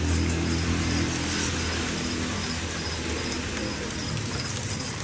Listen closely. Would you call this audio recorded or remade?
recorded